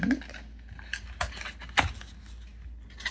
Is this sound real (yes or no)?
yes